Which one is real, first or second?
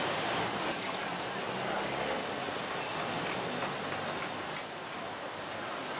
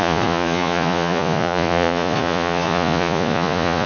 first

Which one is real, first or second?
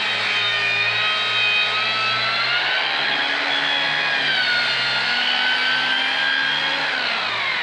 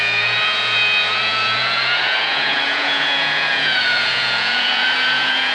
first